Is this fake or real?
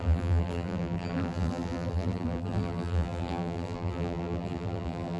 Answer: fake